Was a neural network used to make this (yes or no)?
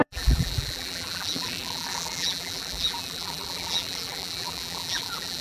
yes